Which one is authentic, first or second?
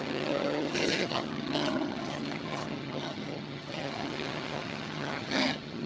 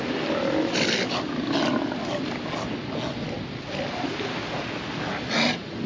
second